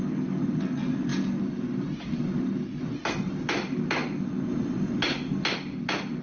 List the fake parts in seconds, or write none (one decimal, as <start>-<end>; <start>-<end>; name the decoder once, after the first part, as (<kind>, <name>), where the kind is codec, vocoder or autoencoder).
none